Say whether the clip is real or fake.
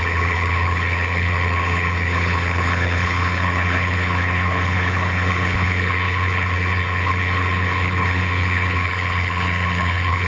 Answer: fake